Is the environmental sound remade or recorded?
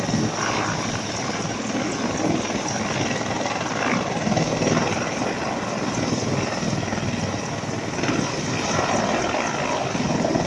recorded